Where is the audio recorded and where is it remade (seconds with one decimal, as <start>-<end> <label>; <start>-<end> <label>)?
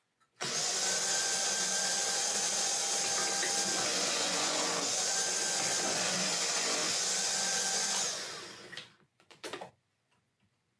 0.0-2.8 remade; 2.8-3.7 recorded; 3.7-10.8 remade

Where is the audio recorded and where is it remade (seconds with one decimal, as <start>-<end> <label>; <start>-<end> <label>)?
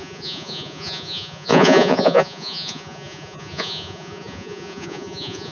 0.0-5.5 remade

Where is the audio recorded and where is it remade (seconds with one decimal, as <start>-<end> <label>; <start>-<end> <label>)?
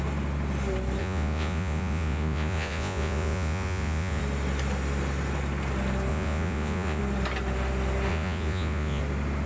0.0-1.0 recorded; 1.0-4.2 remade; 4.2-6.1 recorded; 6.1-7.0 remade; 7.0-8.1 recorded; 8.1-9.0 remade; 9.0-9.5 recorded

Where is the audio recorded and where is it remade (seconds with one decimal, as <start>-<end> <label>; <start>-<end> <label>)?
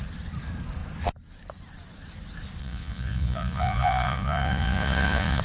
0.0-2.6 recorded; 2.6-5.4 remade